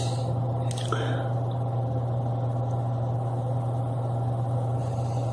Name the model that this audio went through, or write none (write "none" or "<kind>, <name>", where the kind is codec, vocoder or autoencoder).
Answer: none